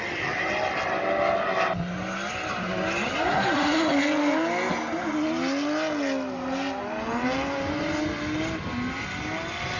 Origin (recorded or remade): recorded